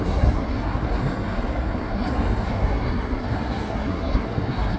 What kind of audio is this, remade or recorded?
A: remade